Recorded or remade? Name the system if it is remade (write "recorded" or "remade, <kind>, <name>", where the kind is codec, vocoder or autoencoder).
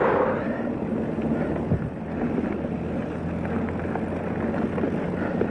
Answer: recorded